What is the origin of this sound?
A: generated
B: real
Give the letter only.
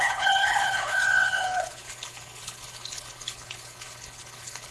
A